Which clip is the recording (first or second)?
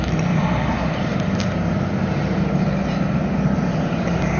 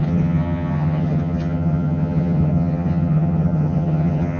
first